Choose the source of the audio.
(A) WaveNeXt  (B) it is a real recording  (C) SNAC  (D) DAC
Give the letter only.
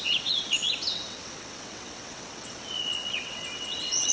A